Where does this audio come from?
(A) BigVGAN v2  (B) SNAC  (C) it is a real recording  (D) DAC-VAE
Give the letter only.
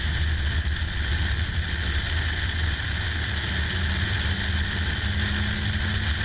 C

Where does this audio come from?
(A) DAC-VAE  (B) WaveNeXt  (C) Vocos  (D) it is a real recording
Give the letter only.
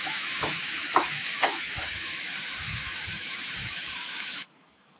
A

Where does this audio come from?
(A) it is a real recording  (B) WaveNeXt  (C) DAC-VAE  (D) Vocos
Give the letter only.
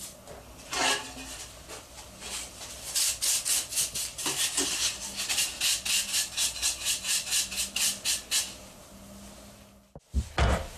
A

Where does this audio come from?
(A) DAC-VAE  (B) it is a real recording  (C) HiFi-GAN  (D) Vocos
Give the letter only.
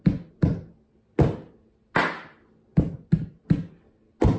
B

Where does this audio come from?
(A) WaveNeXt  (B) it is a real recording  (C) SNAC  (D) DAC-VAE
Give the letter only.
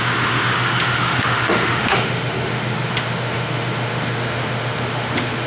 D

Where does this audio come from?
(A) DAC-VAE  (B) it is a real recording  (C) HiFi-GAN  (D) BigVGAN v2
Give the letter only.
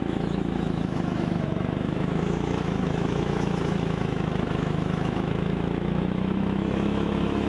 A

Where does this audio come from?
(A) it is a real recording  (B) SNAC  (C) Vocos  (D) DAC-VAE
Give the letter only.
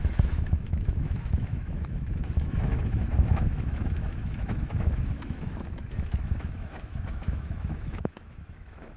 D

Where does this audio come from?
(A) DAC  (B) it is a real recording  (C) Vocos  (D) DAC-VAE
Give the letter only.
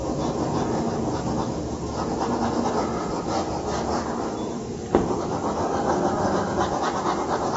B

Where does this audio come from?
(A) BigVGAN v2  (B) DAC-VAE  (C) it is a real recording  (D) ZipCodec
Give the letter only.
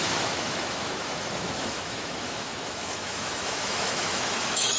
B